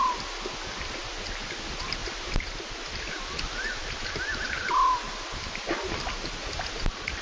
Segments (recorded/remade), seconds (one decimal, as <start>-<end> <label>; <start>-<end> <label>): 0.0-7.2 recorded